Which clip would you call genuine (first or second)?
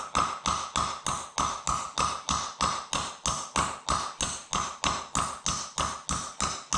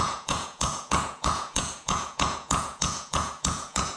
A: first